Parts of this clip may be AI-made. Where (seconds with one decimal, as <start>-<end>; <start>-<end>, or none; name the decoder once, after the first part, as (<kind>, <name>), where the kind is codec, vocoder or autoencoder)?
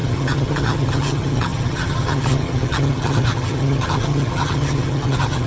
0.0-5.5 (vocoder, HiFi-GAN)